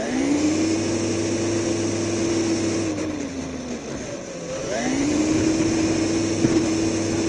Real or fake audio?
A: real